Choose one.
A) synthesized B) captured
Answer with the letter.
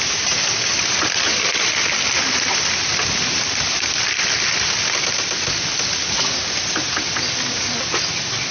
B